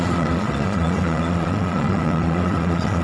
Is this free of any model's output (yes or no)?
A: no